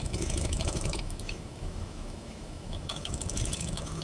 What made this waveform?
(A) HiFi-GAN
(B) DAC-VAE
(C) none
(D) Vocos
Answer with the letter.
B